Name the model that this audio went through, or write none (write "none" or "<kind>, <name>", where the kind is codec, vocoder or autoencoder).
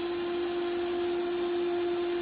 none